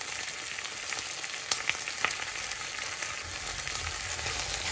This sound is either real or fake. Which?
real